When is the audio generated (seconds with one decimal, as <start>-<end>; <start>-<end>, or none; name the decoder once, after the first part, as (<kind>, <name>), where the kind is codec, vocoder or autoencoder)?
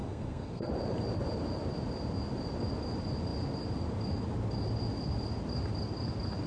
0.0-0.7 (codec, SNAC)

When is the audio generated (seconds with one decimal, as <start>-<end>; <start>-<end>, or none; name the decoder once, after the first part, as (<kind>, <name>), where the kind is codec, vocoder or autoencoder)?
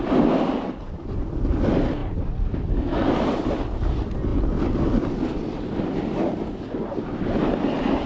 none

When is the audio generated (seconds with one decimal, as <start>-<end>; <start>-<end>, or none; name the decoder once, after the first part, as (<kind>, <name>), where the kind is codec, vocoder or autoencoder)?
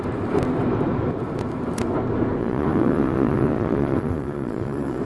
2.4-5.0 (vocoder, Vocos)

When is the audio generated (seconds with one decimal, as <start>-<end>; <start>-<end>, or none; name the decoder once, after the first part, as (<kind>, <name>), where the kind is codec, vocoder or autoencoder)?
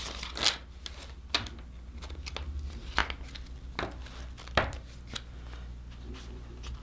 none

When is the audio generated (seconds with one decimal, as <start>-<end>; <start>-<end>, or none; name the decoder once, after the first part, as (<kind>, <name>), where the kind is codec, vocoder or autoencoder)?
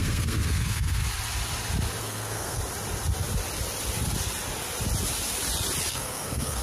0.0-1.0 (codec, SNAC); 2.0-2.6; 5.9-6.6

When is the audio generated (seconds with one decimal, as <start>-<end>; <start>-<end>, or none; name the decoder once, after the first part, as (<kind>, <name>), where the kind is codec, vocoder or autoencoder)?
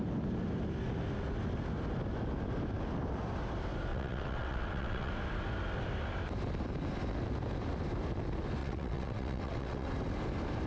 3.9-5.1 (vocoder, WaveNeXt); 8.6-9.9